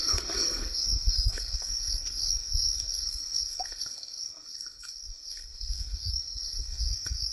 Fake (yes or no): yes